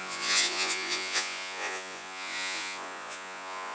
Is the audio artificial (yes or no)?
yes